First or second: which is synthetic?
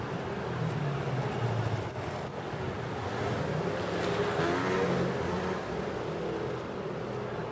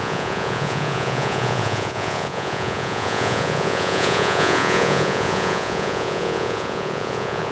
second